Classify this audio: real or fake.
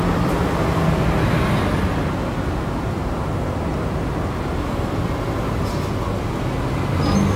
real